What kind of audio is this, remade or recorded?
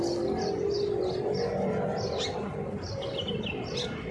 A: recorded